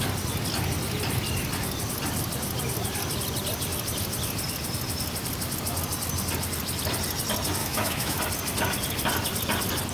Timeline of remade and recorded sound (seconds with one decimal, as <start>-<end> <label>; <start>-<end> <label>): 0.0-7.6 recorded; 7.6-8.2 remade; 8.2-9.9 recorded